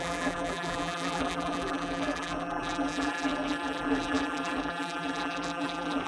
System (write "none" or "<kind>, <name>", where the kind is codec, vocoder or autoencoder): vocoder, BigVGAN v2